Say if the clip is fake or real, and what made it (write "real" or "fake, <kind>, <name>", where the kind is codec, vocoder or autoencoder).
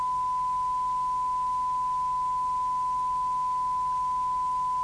real